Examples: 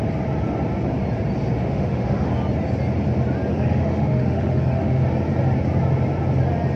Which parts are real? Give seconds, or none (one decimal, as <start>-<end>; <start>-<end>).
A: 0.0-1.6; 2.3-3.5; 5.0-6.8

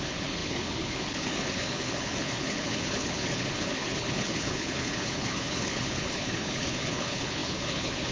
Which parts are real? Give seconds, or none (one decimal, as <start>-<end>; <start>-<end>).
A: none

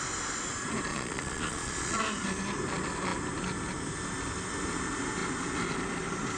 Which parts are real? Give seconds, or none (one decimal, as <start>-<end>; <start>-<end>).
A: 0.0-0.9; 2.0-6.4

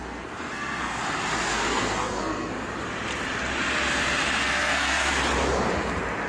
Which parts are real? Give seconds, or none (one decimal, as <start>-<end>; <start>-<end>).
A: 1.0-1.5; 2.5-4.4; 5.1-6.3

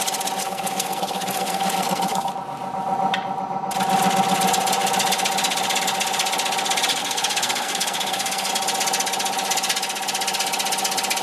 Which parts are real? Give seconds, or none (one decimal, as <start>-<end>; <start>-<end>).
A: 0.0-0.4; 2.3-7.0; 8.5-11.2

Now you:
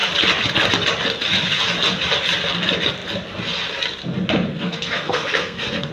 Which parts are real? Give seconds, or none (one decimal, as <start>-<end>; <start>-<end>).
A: 0.0-4.5

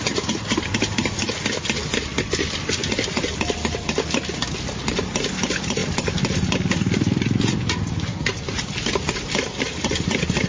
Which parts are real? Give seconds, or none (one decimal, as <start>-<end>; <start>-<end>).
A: 0.0-2.8; 3.4-5.8; 9.6-10.5